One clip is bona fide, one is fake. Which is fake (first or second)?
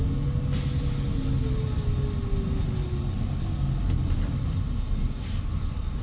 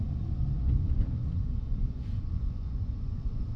second